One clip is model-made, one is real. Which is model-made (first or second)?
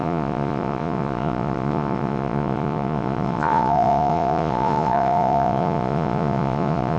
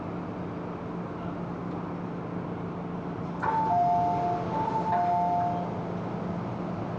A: first